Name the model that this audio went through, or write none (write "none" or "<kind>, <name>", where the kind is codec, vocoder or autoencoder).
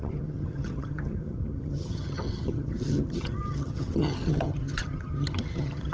vocoder, HiFi-GAN